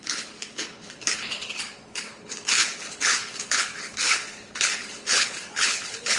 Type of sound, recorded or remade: remade